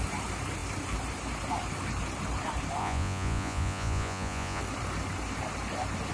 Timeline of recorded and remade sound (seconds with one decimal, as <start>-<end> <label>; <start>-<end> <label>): 0.0-2.8 recorded; 2.8-4.6 remade; 4.6-6.1 recorded